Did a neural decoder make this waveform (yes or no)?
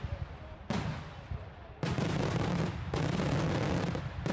no